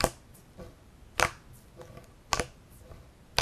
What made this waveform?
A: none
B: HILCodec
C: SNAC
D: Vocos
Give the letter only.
A